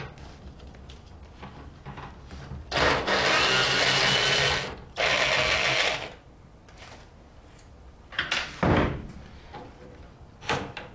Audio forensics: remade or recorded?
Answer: recorded